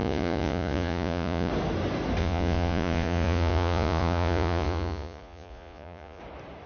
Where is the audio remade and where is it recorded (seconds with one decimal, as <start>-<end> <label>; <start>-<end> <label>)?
0.0-1.5 remade; 1.5-2.2 recorded; 2.2-6.2 remade; 6.2-6.7 recorded